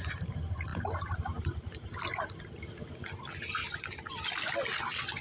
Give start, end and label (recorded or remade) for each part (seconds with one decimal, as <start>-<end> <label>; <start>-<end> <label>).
0.0-0.7 recorded; 0.7-2.4 remade; 2.4-3.6 recorded; 3.6-4.1 remade; 4.1-5.2 recorded